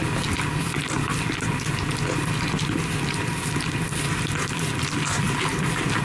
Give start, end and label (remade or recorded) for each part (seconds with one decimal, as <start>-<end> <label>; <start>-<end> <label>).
0.0-6.0 recorded